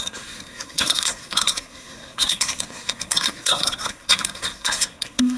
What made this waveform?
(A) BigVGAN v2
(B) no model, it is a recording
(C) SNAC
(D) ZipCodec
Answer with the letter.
C